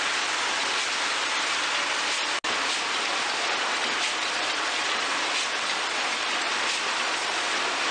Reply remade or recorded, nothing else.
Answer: recorded